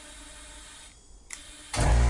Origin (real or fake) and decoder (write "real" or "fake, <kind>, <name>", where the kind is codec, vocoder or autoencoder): real